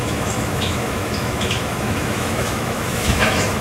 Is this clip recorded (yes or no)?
no